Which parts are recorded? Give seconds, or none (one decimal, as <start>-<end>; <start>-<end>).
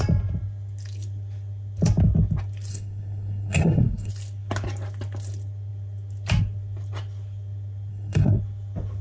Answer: 0.0-2.7; 4.1-7.9; 8.4-9.0